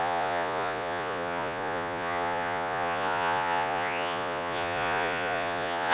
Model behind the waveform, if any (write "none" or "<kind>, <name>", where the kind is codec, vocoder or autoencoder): vocoder, Vocos